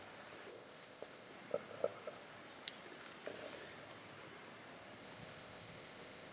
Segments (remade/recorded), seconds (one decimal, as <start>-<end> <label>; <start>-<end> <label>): 0.0-0.5 recorded; 0.5-1.3 remade; 1.3-5.0 recorded; 5.0-6.3 remade